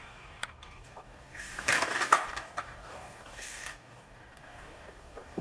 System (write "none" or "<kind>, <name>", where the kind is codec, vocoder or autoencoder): codec, DAC